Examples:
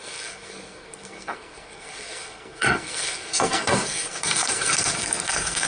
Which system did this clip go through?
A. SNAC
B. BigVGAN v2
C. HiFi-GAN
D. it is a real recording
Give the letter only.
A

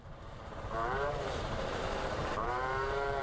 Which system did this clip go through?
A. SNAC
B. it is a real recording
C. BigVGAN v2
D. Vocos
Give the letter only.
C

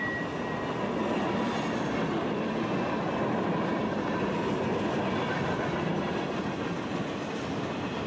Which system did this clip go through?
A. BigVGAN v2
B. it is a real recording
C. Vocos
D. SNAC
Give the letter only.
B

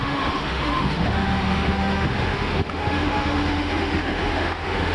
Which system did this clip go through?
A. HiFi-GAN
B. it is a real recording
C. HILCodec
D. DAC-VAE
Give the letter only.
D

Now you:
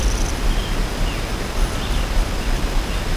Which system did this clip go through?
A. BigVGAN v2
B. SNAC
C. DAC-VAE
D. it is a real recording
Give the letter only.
D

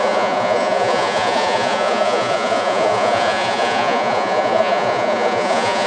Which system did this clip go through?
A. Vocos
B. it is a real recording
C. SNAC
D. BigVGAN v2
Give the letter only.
A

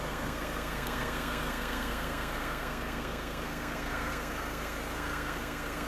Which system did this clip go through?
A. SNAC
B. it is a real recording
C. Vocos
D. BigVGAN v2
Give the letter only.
A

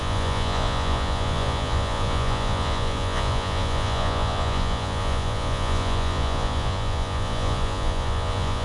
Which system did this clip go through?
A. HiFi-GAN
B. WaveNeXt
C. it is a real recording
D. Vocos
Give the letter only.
D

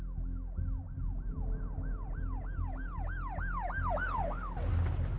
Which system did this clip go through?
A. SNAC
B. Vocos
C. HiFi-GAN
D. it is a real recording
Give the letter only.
D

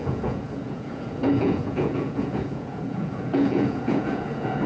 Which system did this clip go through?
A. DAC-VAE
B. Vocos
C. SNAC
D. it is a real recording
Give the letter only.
B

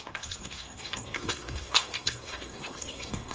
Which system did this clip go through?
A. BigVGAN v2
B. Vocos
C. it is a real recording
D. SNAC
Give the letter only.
D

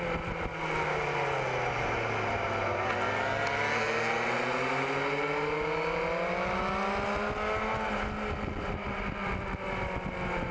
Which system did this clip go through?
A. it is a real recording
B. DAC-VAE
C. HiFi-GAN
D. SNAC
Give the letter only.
A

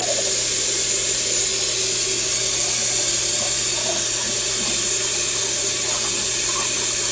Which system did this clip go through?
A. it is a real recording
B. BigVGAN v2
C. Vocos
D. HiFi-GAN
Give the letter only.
A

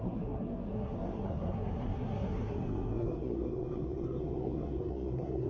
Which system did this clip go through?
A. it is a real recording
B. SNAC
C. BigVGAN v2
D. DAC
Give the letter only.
B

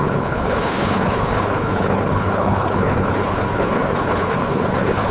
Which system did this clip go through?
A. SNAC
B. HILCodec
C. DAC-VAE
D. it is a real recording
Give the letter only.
B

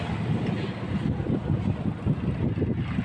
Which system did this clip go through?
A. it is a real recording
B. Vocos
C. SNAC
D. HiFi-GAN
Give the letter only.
A